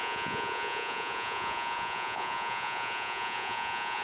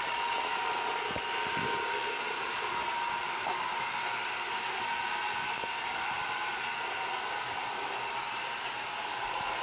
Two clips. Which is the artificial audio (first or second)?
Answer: first